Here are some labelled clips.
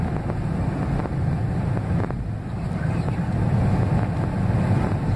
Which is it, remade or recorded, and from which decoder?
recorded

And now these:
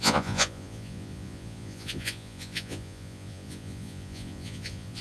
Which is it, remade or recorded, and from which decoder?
remade, vocoder, Vocos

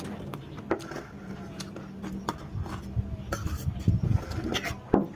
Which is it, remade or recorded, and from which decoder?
recorded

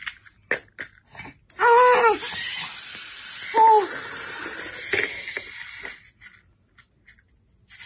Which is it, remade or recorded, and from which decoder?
recorded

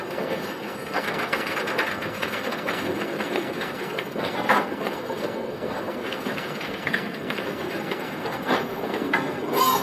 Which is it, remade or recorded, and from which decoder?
remade, codec, SNAC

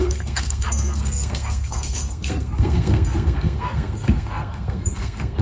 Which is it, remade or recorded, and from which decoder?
remade, codec, SNAC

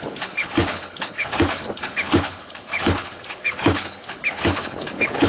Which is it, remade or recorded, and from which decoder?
remade, codec, HILCodec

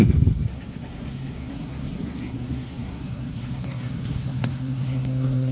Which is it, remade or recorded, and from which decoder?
remade, codec, SNAC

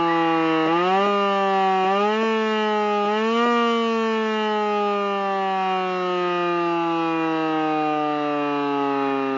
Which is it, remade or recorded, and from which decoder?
recorded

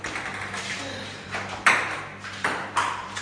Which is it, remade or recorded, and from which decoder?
remade, vocoder, BigVGAN v2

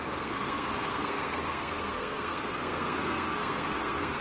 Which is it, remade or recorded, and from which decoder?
remade, codec, SNAC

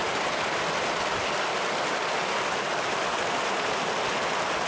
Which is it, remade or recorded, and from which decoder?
recorded